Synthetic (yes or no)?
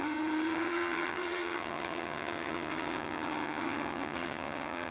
yes